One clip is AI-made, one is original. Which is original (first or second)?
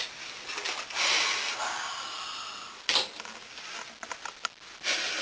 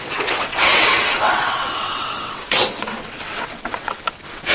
first